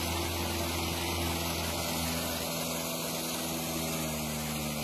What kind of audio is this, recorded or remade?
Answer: recorded